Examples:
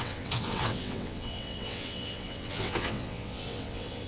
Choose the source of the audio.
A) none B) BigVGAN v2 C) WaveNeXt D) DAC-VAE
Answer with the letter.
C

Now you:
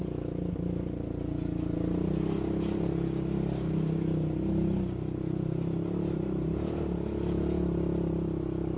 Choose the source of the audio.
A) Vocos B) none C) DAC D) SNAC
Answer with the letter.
B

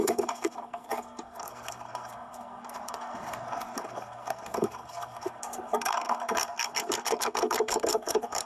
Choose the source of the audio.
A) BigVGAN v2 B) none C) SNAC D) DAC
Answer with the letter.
C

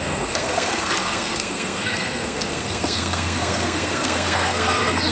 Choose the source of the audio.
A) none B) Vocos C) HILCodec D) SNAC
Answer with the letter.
D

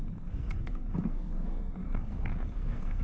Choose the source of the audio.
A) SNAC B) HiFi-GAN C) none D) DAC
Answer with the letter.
A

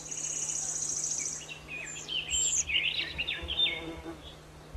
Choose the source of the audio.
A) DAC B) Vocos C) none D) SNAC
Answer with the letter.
C